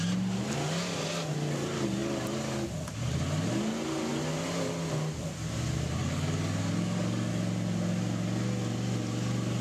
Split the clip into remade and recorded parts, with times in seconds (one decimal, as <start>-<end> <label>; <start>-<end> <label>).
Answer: 0.0-6.0 recorded; 6.0-7.3 remade; 7.3-9.6 recorded